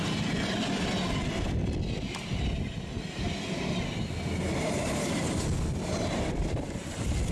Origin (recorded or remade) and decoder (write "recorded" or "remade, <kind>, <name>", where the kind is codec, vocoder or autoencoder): recorded